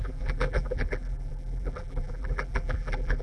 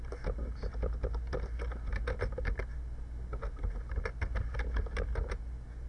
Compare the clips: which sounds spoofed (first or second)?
first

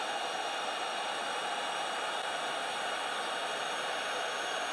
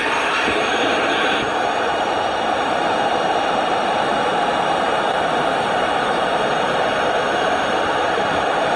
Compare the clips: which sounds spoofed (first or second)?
second